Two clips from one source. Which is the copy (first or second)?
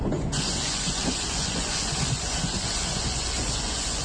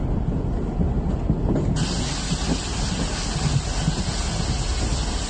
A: first